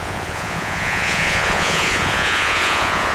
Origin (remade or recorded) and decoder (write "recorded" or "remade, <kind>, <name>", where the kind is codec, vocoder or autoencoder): remade, vocoder, Vocos